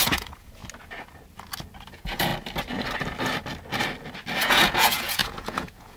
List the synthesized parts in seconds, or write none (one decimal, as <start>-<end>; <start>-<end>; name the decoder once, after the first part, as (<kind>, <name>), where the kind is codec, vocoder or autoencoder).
0.0-0.6 (vocoder, Vocos); 1.9-2.3; 4.4-6.0